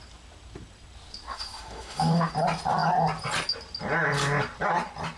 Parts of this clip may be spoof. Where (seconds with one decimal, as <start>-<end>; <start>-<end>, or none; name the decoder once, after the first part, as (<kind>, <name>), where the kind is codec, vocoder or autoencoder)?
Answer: 1.3-2.3 (autoencoder, DAC-VAE)